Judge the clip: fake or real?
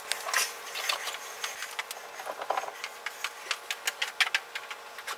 real